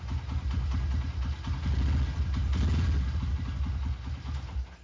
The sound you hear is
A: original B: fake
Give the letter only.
A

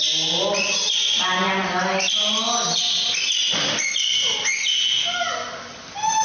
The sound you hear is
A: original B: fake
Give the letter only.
A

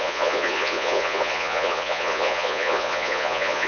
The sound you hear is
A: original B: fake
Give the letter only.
B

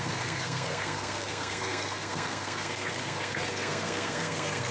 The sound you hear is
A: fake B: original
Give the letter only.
A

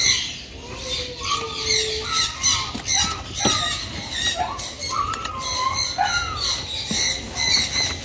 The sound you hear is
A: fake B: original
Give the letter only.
B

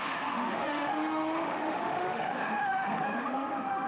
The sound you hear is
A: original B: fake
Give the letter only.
B